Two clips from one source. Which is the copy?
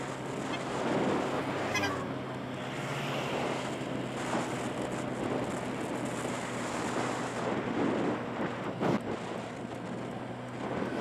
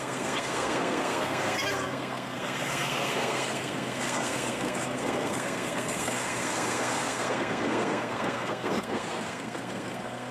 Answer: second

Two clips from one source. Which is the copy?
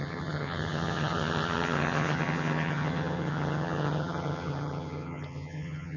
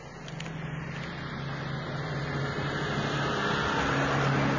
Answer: first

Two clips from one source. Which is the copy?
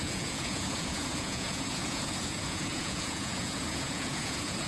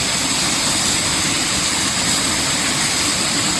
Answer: first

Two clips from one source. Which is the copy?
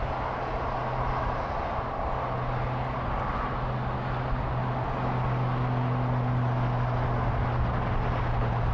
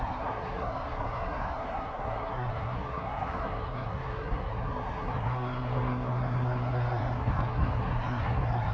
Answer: second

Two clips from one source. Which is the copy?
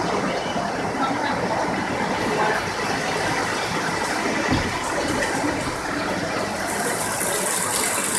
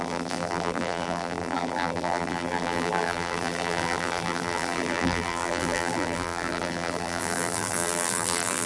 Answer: second